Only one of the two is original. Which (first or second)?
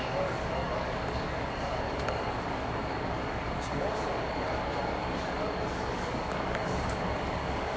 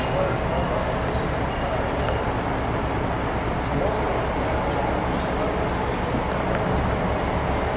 second